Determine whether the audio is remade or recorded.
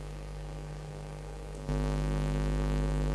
remade